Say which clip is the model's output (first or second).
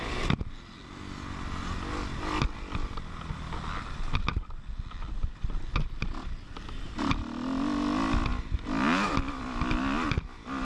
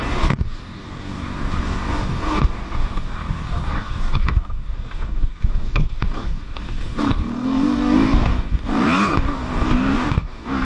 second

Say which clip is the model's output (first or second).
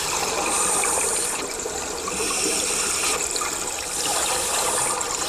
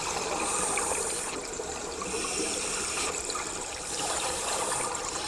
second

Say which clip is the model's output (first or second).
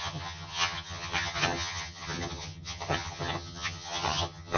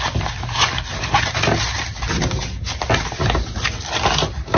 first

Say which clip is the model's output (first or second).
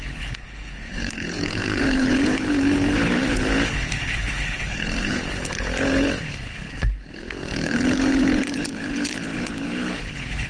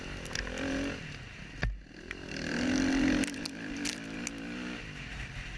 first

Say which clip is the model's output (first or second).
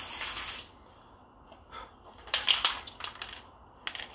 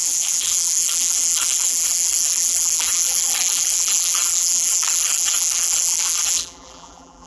second